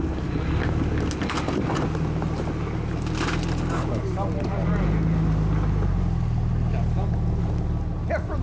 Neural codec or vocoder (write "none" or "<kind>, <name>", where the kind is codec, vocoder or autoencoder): none